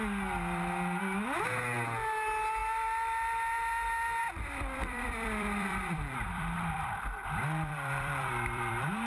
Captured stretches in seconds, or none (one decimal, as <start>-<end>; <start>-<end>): 0.0-4.2